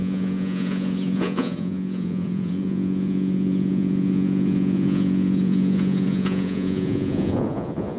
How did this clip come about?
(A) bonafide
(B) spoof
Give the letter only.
B